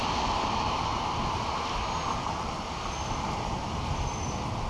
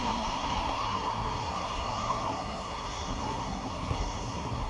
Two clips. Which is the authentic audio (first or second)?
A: first